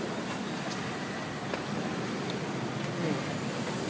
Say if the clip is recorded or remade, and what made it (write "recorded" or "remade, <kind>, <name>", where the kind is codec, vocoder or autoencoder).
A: recorded